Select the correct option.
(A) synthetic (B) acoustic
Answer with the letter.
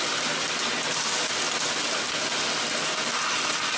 B